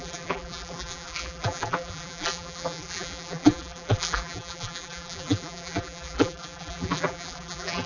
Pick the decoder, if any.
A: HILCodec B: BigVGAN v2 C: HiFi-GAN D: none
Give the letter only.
B